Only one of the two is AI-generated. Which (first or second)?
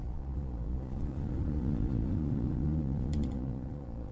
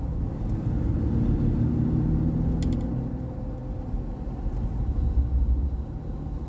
first